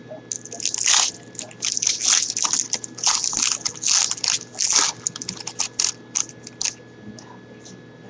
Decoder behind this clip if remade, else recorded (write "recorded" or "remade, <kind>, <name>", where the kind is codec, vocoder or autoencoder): recorded